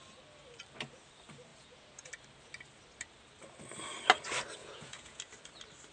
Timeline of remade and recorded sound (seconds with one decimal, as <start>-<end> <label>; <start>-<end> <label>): 0.0-1.5 recorded; 1.5-2.1 remade; 2.1-4.6 recorded; 4.6-5.2 remade; 5.2-5.9 recorded